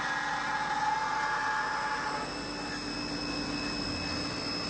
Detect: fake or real real